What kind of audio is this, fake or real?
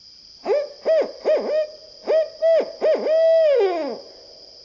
real